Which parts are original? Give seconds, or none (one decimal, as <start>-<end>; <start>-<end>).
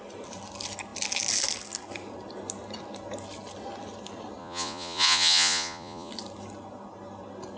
0.0-4.4; 6.1-7.6